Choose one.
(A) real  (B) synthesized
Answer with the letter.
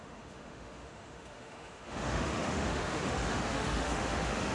B